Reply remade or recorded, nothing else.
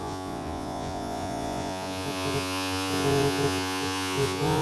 remade